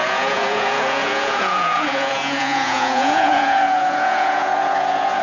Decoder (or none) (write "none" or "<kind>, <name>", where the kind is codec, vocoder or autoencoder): vocoder, Vocos